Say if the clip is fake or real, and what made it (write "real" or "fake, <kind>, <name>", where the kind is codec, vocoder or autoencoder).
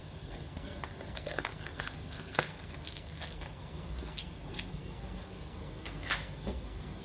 fake, codec, SNAC